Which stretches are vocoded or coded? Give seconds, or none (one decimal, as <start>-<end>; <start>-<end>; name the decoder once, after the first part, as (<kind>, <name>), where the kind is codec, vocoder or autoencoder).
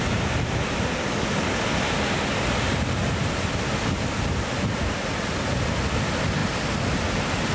none